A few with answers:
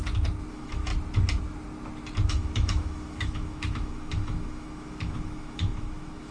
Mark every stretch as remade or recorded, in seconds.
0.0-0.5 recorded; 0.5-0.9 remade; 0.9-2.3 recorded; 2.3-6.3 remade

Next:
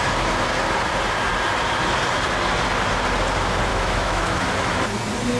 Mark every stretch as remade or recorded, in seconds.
0.0-3.7 recorded; 3.7-4.4 remade; 4.4-5.4 recorded

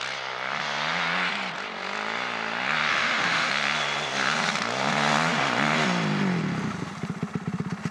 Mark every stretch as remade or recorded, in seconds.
0.0-2.9 recorded; 2.9-3.5 remade; 3.5-7.9 recorded

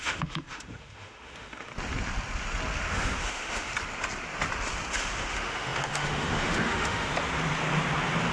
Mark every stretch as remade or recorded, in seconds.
0.0-1.7 remade; 1.7-2.9 recorded; 2.9-3.7 remade; 3.7-4.9 recorded; 4.9-7.1 remade; 7.1-8.3 recorded

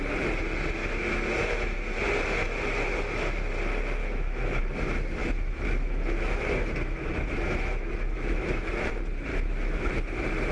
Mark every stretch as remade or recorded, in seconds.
0.0-0.8 recorded; 0.8-2.0 remade; 2.0-4.0 recorded; 4.0-4.6 remade; 4.6-5.2 recorded; 5.2-8.9 remade; 8.9-9.3 recorded; 9.3-9.9 remade; 9.9-10.5 recorded